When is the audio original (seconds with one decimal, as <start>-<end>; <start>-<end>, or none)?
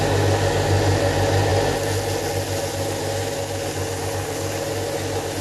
0.0-5.4